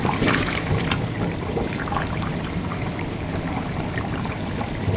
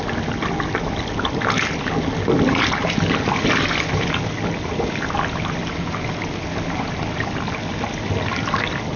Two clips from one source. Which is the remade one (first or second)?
first